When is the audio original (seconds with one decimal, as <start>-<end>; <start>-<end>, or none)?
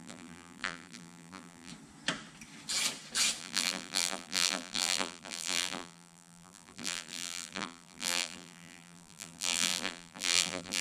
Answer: 1.7-3.4